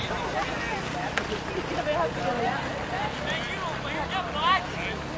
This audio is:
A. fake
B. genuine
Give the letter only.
B